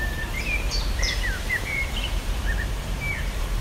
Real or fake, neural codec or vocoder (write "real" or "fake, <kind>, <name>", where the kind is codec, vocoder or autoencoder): fake, vocoder, BigVGAN v2